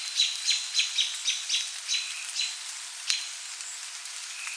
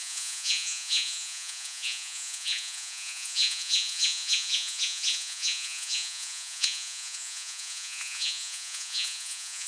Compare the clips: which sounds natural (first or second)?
first